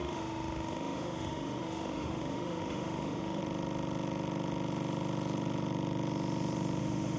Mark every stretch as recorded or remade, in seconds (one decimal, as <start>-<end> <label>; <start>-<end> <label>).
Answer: 0.0-3.4 remade; 3.4-6.8 recorded; 6.8-7.2 remade